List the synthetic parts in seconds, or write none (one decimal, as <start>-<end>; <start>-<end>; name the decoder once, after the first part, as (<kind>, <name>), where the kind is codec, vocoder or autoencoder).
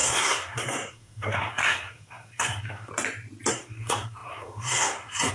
0.0-2.9 (codec, SNAC); 3.5-5.3